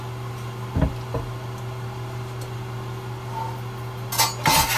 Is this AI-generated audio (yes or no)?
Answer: no